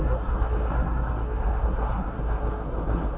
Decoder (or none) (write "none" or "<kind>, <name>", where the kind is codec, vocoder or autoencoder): codec, SNAC